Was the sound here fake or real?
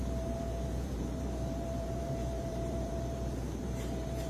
fake